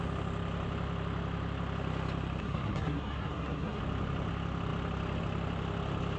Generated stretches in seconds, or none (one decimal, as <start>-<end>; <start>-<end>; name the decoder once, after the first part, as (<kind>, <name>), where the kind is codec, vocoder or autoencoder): 2.4-3.8 (codec, SNAC)